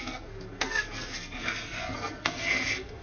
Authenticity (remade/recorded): remade